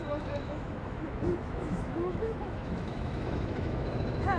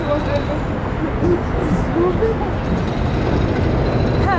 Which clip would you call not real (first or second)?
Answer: first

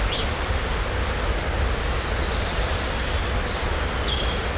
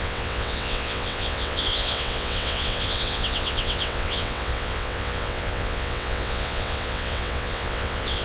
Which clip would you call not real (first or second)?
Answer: second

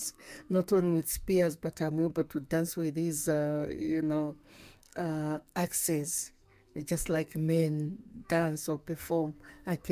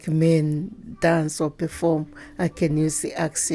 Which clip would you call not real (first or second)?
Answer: first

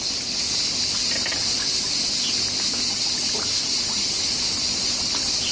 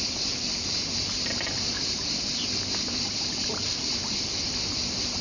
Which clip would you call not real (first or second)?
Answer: second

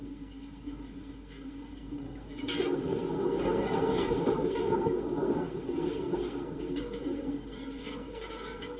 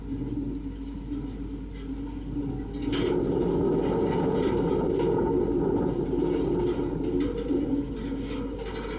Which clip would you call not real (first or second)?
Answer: first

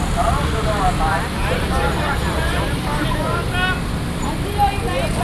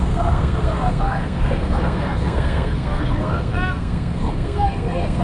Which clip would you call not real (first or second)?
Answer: second